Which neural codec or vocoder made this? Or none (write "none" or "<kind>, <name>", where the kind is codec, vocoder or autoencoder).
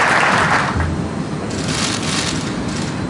none